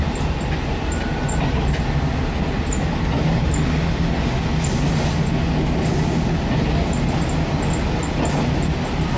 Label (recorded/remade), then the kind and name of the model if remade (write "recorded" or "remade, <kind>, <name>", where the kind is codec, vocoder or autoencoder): recorded